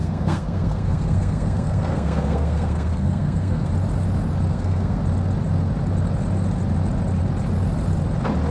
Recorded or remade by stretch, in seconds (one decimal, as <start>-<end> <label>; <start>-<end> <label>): 0.0-3.7 remade; 3.7-4.5 recorded; 4.5-5.0 remade; 5.0-8.5 recorded